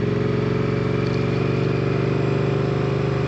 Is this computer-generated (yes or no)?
no